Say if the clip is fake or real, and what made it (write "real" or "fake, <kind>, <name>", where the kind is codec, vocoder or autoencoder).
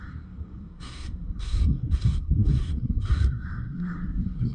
fake, codec, SNAC